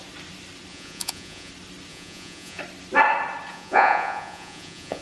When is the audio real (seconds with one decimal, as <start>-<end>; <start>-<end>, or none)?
0.0-0.7; 1.5-1.9; 2.6-3.5